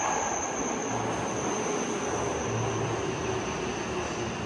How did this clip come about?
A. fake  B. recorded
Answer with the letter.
B